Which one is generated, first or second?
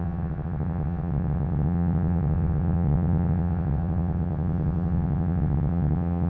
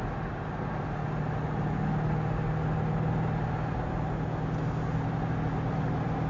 first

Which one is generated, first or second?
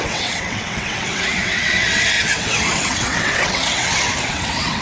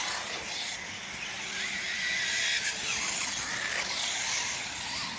first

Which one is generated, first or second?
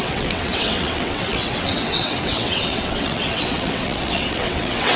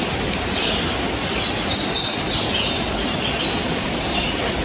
first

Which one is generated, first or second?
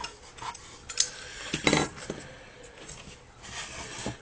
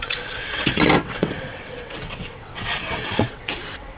second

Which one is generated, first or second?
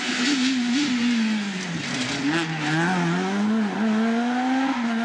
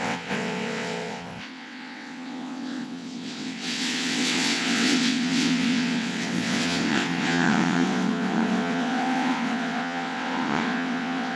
second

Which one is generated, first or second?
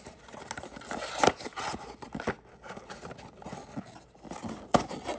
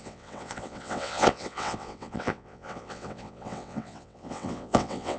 second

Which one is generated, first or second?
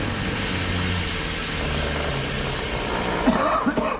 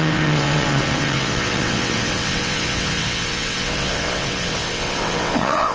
second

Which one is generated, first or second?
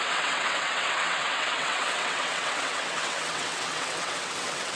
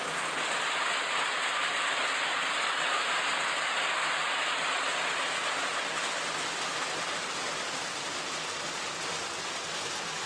first